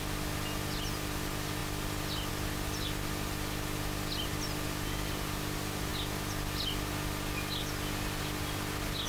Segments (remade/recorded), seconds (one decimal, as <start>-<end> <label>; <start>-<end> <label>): 0.0-9.1 recorded